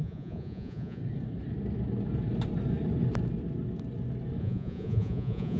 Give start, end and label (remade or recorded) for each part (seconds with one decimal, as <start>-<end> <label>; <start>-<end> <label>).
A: 0.0-1.0 remade; 1.0-4.4 recorded; 4.4-5.6 remade